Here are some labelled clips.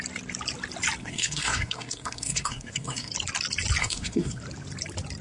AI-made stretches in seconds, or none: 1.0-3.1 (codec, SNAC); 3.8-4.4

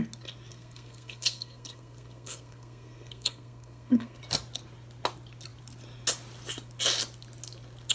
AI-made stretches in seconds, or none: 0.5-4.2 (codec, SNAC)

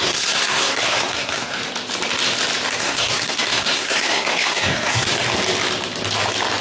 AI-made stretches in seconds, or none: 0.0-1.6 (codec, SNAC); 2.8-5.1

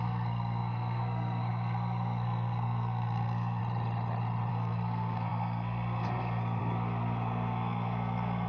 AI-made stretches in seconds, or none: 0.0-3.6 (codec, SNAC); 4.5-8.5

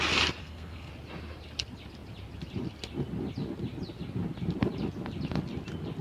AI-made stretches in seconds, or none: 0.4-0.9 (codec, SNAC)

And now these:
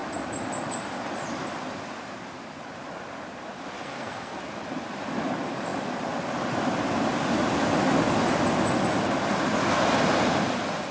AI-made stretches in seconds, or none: 3.8-4.4 (codec, SNAC)

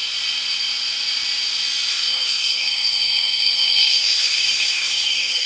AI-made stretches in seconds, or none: 1.9-5.5 (codec, SNAC)